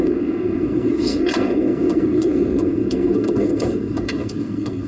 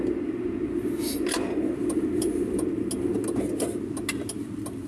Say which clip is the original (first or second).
second